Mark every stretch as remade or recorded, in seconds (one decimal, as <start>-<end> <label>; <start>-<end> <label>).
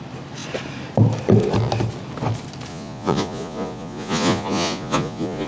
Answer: 0.0-2.7 recorded; 2.7-5.5 remade